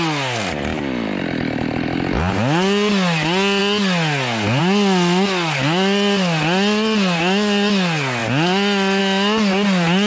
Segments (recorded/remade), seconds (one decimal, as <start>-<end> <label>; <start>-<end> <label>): 0.0-10.1 recorded